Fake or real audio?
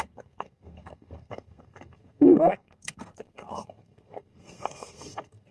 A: fake